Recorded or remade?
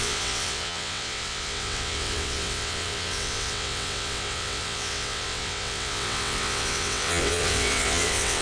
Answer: remade